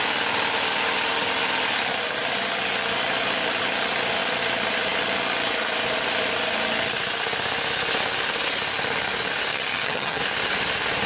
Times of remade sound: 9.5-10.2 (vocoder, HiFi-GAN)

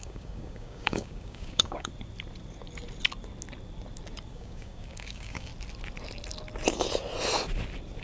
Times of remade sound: 0.0-1.9 (codec, DAC); 4.3-5.5

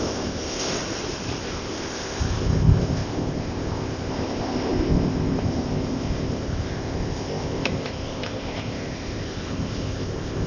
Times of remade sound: 0.0-0.7 (codec, ZipCodec); 1.4-10.5